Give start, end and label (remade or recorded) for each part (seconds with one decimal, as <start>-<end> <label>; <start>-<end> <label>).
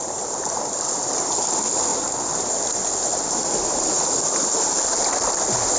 0.0-5.8 recorded